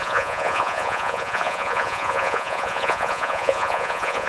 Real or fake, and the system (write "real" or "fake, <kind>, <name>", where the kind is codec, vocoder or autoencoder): fake, vocoder, Vocos